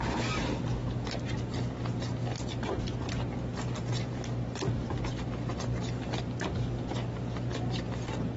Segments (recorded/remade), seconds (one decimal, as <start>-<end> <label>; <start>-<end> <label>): 0.0-8.4 recorded